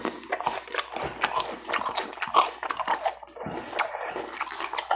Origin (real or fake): real